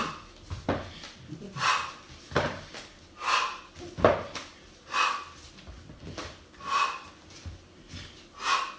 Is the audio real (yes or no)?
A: yes